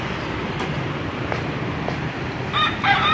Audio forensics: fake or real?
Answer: fake